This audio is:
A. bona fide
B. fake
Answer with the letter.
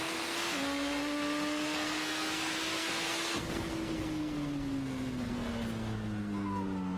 B